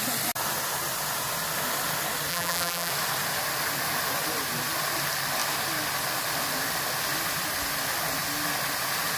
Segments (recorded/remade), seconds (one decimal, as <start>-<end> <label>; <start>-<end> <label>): 0.0-2.3 recorded; 2.3-2.9 remade; 2.9-9.2 recorded